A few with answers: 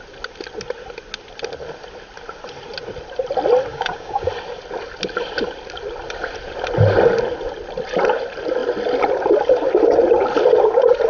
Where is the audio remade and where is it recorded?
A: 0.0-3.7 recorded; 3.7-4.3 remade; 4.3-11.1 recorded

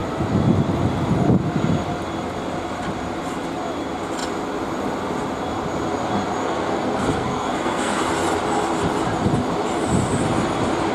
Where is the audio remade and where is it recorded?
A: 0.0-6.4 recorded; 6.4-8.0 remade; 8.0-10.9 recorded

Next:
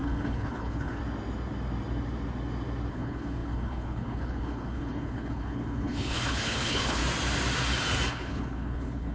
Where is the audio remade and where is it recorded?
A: 0.0-1.0 remade; 1.0-2.9 recorded; 2.9-7.0 remade; 7.0-8.1 recorded; 8.1-9.1 remade

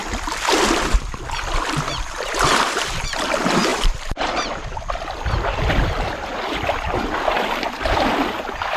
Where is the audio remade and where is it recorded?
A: 0.0-3.7 recorded; 3.7-4.9 remade; 4.9-8.8 recorded